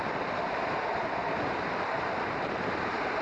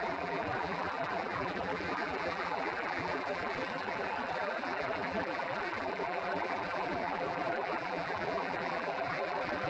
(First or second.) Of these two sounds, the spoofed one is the second